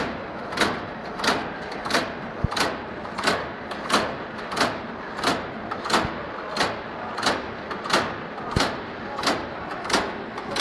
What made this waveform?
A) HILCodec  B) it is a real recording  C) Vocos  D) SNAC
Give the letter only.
B